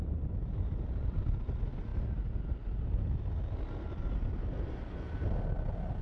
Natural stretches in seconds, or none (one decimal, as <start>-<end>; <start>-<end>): 0.0-6.0